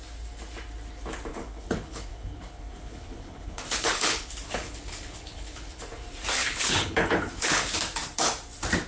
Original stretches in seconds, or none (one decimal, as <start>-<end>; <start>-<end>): 0.0-1.3; 5.8-6.4; 7.8-8.9